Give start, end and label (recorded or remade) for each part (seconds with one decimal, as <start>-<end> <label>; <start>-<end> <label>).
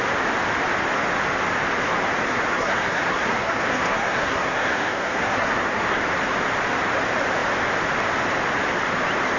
0.0-2.3 recorded; 2.3-6.0 remade; 6.0-9.4 recorded